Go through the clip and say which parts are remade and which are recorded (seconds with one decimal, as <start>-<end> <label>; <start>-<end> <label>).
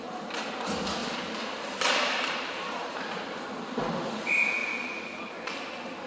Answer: 0.0-1.0 recorded; 1.0-3.4 remade; 3.4-4.6 recorded; 4.6-5.5 remade; 5.5-6.1 recorded